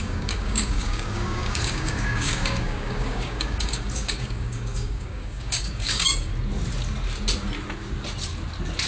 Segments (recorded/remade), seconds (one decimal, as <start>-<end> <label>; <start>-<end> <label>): 0.0-6.3 remade; 6.3-8.9 recorded